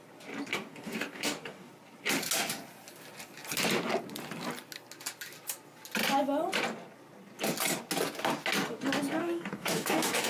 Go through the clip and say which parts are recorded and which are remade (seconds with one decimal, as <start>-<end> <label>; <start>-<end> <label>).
0.0-0.5 recorded; 0.5-1.7 remade; 1.7-9.2 recorded; 9.2-10.3 remade